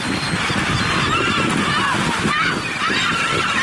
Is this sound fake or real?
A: real